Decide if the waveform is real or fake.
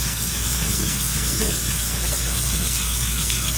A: fake